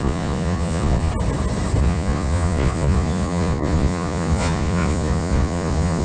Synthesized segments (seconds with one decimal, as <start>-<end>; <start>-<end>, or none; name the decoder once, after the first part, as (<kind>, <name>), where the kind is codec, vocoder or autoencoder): 0.0-1.1 (vocoder, Vocos); 1.8-6.0

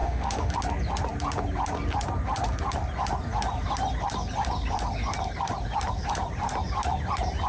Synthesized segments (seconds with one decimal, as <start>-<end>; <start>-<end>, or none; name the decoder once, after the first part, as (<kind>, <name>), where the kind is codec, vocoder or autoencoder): 0.0-0.5 (autoencoder, DAC-VAE)